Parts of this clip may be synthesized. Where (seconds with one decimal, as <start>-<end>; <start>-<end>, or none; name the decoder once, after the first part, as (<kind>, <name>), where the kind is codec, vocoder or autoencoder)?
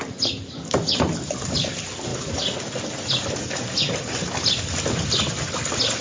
none